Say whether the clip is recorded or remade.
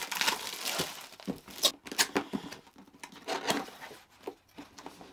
recorded